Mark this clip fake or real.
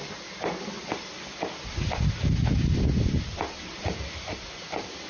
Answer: real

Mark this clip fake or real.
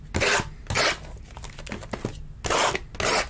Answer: real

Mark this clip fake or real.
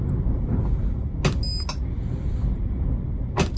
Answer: real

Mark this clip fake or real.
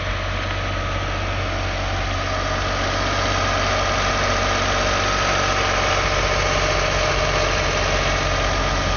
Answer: real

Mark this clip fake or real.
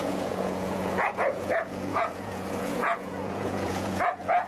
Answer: fake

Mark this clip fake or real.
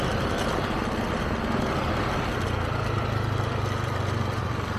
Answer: real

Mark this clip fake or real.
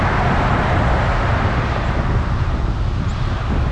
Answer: real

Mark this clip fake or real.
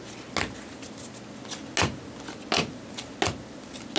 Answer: real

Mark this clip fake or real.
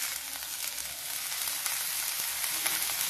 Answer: real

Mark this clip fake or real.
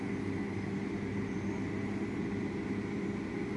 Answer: real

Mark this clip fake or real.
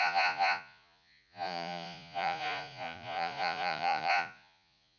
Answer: fake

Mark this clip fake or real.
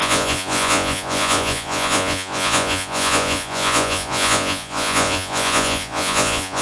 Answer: fake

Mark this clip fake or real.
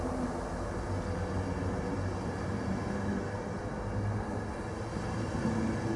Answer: real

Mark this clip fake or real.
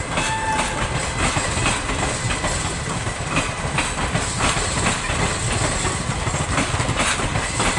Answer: real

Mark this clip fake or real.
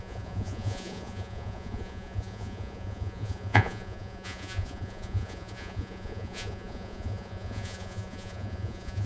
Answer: fake